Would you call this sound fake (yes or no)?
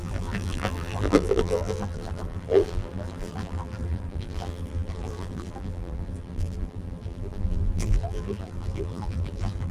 yes